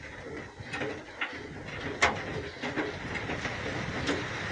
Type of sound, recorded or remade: recorded